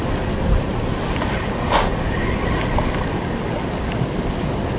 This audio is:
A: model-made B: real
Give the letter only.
B